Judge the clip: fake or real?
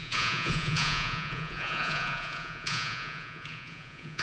fake